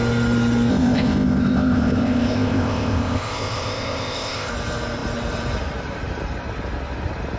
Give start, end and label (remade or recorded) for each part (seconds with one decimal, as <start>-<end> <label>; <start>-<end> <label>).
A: 0.0-0.7 recorded; 0.7-4.5 remade; 4.5-7.4 recorded